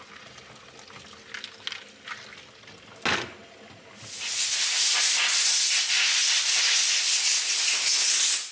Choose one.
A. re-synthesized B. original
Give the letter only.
B